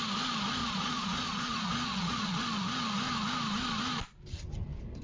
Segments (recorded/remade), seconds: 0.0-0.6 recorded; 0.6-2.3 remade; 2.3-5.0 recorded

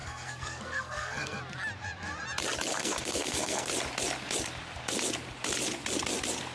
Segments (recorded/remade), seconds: 0.0-1.4 remade; 1.4-2.7 recorded; 2.7-3.7 remade; 3.7-6.5 recorded

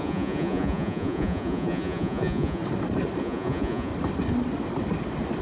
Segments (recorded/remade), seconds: 0.0-2.6 remade; 2.6-3.2 recorded; 3.2-3.9 remade; 3.9-5.4 recorded

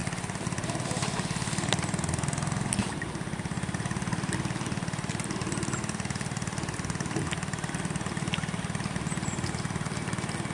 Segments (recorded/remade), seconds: 0.0-10.5 recorded

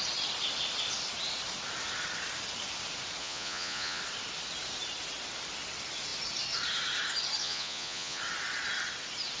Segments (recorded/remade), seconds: 0.0-3.2 recorded; 3.2-4.0 remade; 4.0-7.4 recorded; 7.4-8.2 remade; 8.2-9.4 recorded